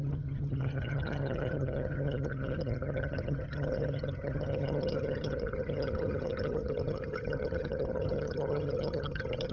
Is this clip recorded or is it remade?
remade